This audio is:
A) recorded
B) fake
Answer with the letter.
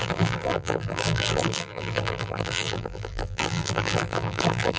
B